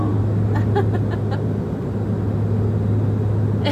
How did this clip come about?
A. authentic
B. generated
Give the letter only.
A